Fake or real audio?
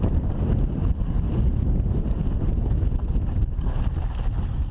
real